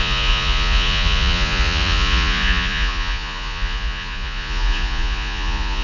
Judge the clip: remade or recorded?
remade